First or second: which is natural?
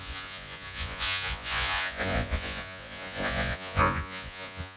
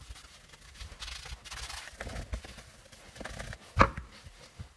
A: second